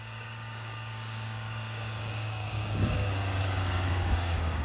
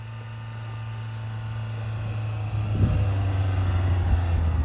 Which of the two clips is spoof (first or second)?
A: first